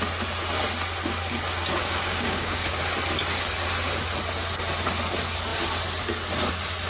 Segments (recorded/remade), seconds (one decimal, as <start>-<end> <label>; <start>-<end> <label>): 0.0-1.8 recorded; 1.8-2.8 remade; 2.8-6.9 recorded